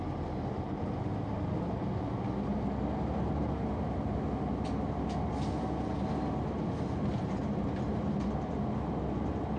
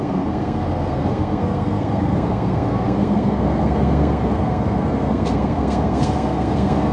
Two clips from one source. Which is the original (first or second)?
first